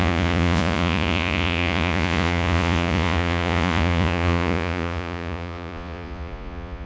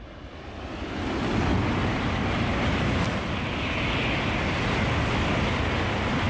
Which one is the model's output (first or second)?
first